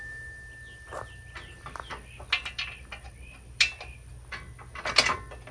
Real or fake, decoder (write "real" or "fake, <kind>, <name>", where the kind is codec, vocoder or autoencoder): real